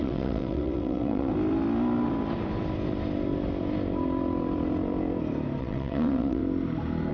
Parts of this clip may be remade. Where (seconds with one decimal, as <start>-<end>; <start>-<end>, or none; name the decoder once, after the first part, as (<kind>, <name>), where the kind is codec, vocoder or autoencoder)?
0.0-1.3 (vocoder, WaveNeXt); 5.6-6.4